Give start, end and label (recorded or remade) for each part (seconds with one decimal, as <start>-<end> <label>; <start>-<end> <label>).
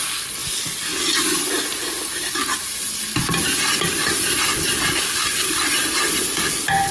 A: 0.0-6.9 recorded